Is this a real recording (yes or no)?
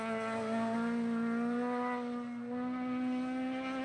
yes